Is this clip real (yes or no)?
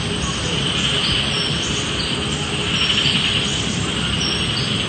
yes